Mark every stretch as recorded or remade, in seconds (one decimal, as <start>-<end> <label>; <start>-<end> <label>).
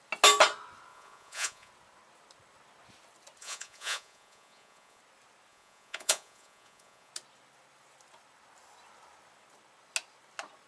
0.0-0.9 recorded; 0.9-1.7 remade; 1.7-3.4 recorded; 3.4-5.0 remade; 5.0-5.5 recorded; 5.5-7.1 remade; 7.1-10.7 recorded